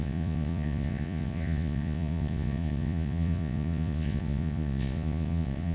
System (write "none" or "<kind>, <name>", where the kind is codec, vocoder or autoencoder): vocoder, Vocos